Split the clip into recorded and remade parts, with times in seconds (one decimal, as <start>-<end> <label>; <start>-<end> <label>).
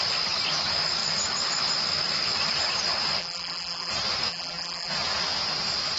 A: 0.0-3.2 recorded; 3.2-3.9 remade; 3.9-4.3 recorded; 4.3-4.9 remade; 4.9-6.0 recorded